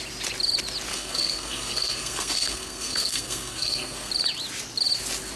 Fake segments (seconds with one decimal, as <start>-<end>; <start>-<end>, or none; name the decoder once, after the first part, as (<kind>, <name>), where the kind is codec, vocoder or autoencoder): 0.9-4.1 (codec, SNAC)